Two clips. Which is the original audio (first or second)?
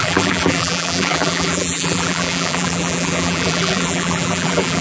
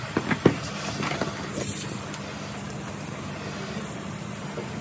second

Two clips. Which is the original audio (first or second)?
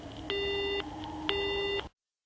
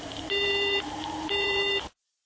first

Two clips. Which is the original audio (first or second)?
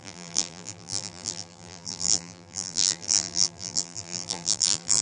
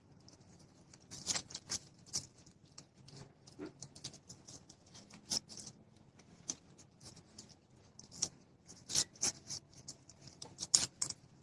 second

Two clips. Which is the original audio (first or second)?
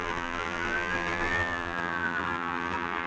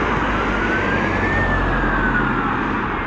second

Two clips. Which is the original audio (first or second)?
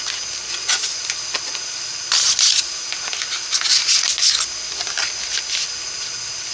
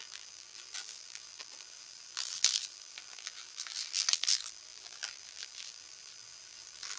first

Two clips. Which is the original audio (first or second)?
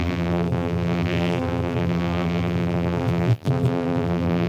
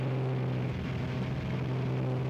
second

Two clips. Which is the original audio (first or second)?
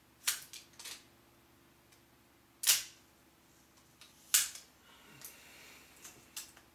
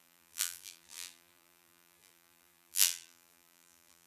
first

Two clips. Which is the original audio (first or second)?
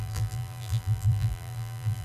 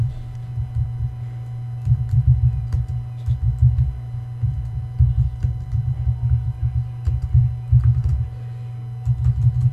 second